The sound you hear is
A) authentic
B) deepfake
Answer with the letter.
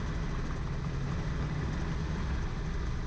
A